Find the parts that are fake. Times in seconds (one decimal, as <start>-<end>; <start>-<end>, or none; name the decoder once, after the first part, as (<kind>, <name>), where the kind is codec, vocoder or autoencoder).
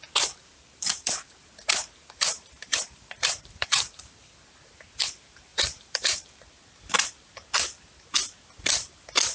0.5-1.4 (vocoder, BigVGAN v2); 2.3-4.4; 5.5-6.4